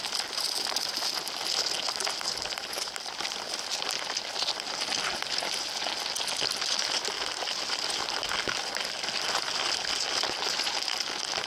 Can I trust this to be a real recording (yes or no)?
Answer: yes